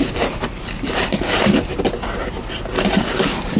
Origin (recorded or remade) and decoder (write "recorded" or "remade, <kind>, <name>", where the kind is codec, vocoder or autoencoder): recorded